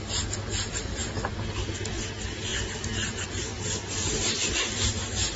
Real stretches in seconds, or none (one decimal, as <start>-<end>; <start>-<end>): 0.0-5.4